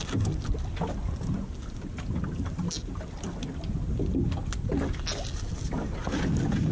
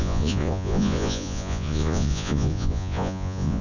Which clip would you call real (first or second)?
first